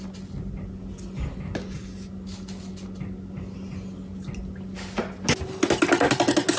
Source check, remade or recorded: recorded